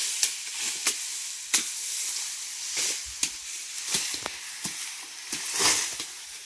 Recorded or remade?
recorded